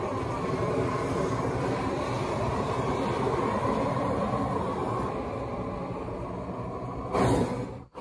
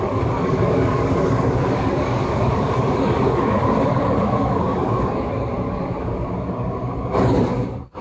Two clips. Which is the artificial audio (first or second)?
second